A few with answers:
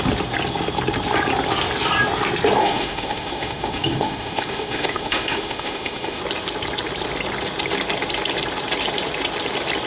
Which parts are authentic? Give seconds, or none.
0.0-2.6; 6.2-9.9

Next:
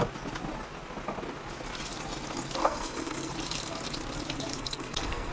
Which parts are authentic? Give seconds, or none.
0.0-2.6; 3.3-4.5

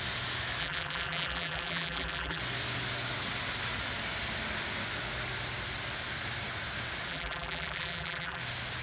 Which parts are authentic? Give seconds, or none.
0.0-0.6; 2.4-7.1; 8.4-8.8

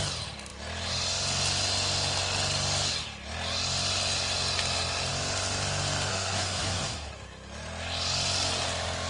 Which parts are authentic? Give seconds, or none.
0.0-6.1; 7.1-9.1

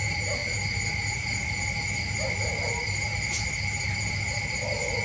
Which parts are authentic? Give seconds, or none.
0.0-5.0

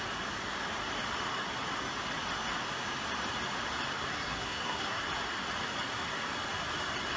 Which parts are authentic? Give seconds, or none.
0.0-4.1; 5.0-7.2